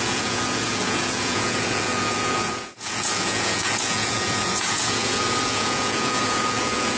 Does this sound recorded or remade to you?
remade